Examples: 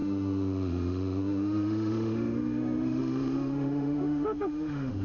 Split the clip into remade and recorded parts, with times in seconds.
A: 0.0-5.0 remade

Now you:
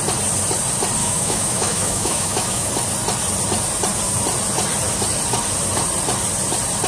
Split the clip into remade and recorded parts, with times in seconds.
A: 0.0-1.0 recorded; 1.0-2.7 remade; 2.7-6.9 recorded